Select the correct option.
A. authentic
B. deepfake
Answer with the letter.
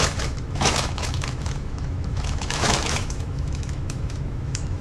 B